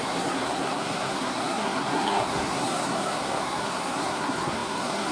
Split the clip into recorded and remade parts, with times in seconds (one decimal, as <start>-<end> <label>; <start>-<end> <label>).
0.0-5.1 remade